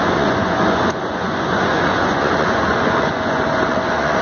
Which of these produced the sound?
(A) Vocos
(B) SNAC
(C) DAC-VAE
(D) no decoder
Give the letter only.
A